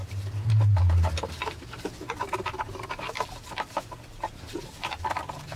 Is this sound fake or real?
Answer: fake